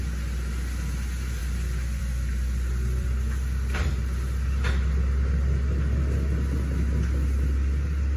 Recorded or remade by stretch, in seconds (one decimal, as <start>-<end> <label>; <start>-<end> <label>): 0.0-1.4 recorded; 1.4-3.8 remade; 3.8-8.2 recorded